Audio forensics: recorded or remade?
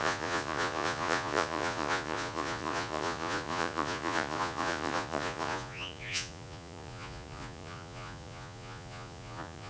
remade